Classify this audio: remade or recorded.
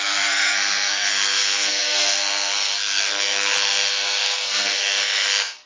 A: remade